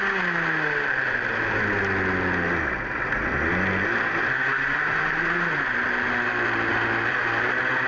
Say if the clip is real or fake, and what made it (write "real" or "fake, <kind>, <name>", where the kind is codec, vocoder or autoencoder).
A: real